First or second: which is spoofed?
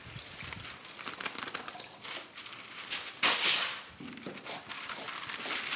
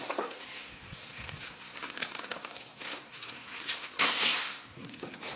second